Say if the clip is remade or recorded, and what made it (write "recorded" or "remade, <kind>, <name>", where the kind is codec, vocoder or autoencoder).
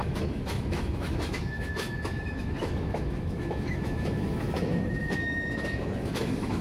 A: remade, autoencoder, DAC-VAE